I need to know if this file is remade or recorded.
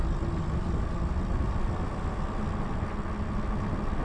recorded